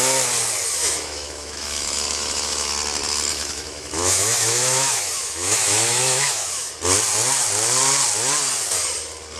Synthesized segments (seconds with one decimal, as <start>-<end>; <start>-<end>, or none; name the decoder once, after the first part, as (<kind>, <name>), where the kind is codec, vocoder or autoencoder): 0.8-2.7 (autoencoder, DAC-VAE); 3.3-6.7

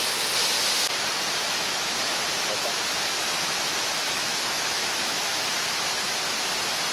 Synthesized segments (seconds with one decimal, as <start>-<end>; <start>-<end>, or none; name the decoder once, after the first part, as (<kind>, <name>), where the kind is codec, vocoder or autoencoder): 1.4-5.5 (autoencoder, DAC-VAE)